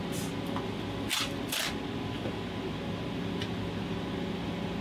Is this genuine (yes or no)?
yes